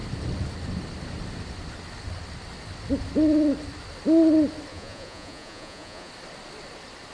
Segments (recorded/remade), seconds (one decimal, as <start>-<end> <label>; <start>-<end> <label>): 0.0-4.7 recorded; 4.7-6.1 remade; 6.1-7.1 recorded